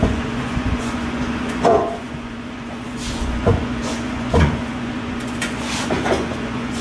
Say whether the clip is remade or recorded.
remade